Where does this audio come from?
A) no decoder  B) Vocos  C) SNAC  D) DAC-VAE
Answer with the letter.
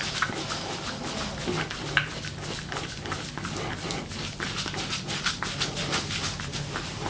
A